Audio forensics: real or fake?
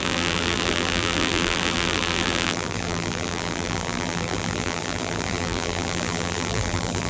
fake